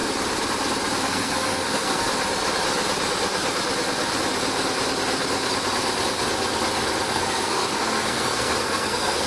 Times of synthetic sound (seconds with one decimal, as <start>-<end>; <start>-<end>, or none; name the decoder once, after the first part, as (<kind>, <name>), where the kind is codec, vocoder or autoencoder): 1.1-2.1 (codec, SNAC); 7.1-9.3